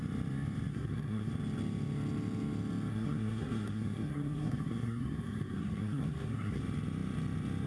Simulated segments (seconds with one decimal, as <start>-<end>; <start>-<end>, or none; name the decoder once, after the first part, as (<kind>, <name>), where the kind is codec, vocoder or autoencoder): 0.7-1.3 (codec, SNAC); 2.9-6.6